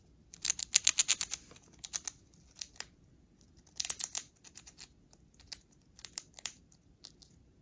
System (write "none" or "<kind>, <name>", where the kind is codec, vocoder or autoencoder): none